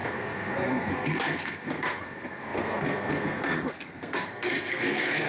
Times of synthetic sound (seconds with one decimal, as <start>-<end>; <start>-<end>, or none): 0.0-5.3

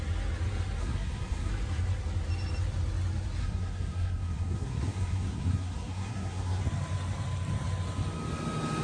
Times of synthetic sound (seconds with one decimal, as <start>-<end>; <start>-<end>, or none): 0.8-1.5; 3.4-6.6

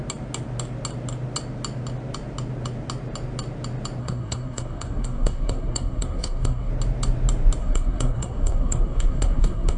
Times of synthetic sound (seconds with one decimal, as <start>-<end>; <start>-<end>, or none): 4.0-6.7; 7.6-9.8